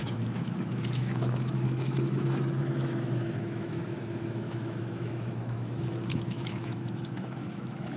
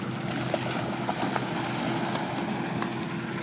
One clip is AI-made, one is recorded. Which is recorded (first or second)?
second